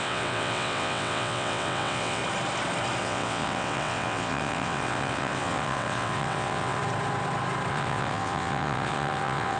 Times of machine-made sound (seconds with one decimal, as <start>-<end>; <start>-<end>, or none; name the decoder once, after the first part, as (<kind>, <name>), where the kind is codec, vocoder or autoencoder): 0.0-2.2 (vocoder, WaveNeXt); 3.0-6.8; 7.7-9.6